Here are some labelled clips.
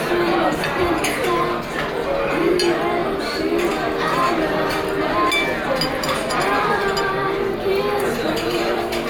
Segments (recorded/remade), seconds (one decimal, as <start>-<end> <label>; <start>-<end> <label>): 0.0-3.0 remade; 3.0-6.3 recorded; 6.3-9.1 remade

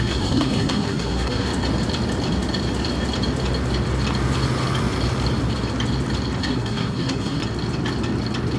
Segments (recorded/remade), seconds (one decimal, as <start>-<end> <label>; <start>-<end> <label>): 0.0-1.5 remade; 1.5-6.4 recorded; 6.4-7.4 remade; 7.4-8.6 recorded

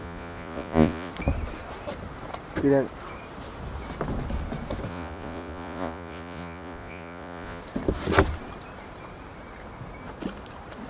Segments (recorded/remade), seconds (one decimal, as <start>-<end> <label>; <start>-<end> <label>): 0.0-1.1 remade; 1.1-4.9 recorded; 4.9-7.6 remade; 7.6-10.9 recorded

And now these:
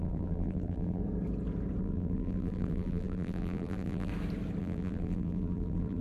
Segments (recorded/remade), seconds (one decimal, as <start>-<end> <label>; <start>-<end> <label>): 0.0-1.0 remade; 1.0-1.8 recorded; 1.8-4.1 remade; 4.1-4.6 recorded; 4.6-6.0 remade

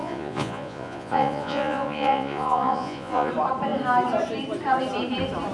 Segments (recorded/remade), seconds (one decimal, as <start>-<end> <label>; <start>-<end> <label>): 0.0-3.3 remade; 3.3-5.5 recorded